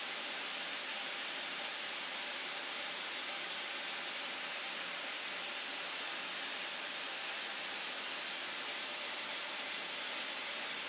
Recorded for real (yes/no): no